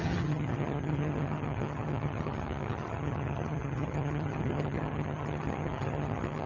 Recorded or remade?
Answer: remade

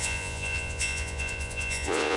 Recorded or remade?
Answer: remade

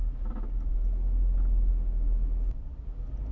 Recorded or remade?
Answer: recorded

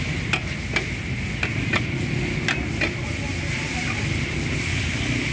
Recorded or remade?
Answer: recorded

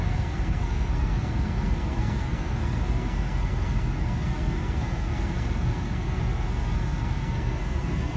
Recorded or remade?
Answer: remade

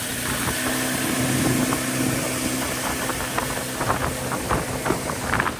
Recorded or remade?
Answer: recorded